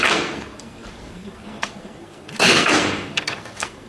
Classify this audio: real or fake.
fake